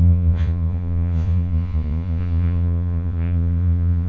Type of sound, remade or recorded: remade